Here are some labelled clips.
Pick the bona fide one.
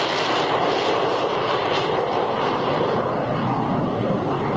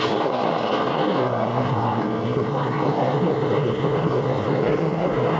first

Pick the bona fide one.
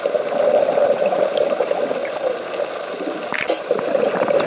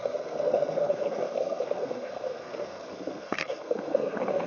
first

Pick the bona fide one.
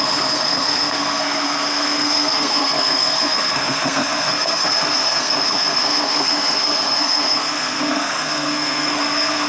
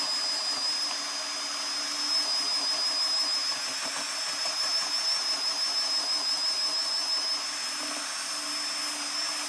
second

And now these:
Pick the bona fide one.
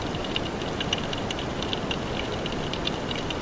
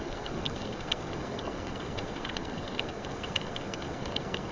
first